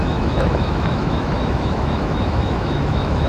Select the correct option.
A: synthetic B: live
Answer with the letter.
A